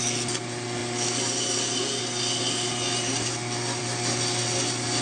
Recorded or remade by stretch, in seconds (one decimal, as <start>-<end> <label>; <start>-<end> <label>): 0.0-5.0 recorded